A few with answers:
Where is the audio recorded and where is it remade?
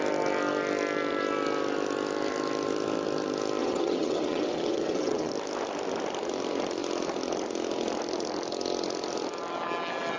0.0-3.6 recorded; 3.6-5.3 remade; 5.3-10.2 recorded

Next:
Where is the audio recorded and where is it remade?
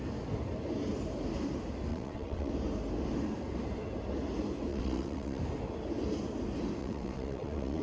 0.0-1.9 recorded; 1.9-2.5 remade; 2.5-4.7 recorded; 4.7-5.4 remade; 5.4-6.8 recorded; 6.8-7.8 remade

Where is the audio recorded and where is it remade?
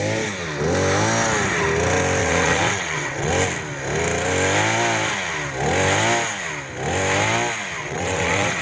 0.0-2.2 recorded; 2.2-3.3 remade; 3.3-7.8 recorded; 7.8-8.6 remade